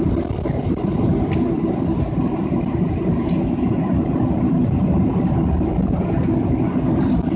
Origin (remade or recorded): remade